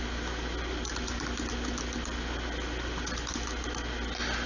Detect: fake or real real